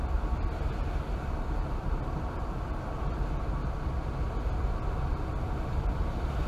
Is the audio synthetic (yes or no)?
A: no